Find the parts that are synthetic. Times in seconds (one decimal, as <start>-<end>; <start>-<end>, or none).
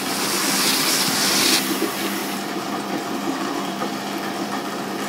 2.2-4.6